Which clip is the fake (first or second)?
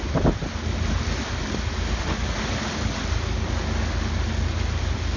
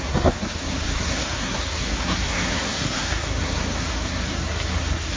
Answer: second